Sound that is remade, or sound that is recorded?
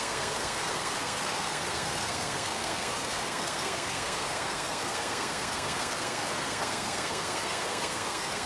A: remade